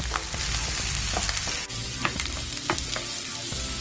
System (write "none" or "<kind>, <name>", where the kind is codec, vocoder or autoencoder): none